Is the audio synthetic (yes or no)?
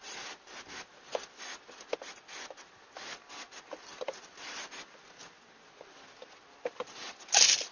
no